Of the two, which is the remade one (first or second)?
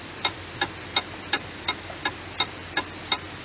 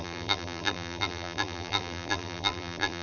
second